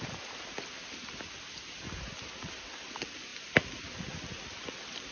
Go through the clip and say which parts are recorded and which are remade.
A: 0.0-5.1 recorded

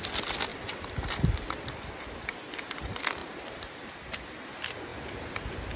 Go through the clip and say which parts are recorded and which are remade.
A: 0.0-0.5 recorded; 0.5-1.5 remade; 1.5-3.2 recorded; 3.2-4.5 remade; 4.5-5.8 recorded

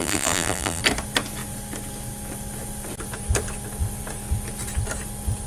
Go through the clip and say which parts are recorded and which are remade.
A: 0.0-0.8 remade; 0.8-5.5 recorded